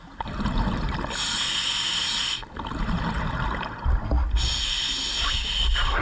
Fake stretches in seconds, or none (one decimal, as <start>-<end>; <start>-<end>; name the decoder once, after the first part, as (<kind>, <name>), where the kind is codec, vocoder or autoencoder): 2.4-3.0 (vocoder, BigVGAN v2)